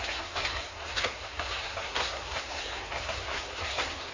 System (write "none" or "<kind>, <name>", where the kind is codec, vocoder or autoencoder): codec, SNAC